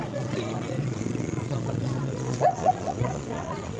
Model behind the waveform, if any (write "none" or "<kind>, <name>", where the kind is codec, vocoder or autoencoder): vocoder, Vocos